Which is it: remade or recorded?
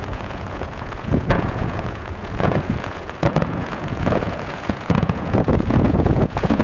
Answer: remade